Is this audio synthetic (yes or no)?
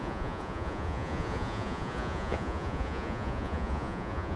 yes